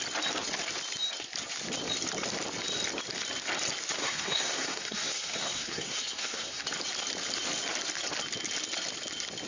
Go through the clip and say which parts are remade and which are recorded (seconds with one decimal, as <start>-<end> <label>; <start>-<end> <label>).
0.0-4.0 recorded; 4.0-6.6 remade; 6.6-9.5 recorded